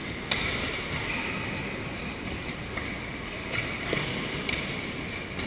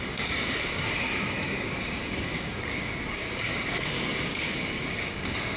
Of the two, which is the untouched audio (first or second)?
first